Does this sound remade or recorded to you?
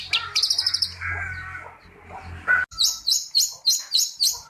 recorded